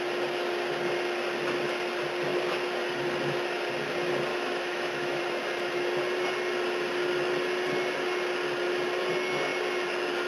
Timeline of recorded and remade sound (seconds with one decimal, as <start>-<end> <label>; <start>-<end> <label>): 0.0-4.3 recorded; 4.3-5.2 remade; 5.2-10.3 recorded